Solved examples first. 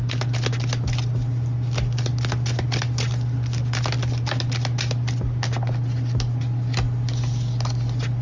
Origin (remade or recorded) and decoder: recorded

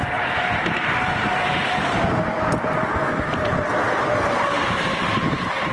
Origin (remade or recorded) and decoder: remade, vocoder, BigVGAN v2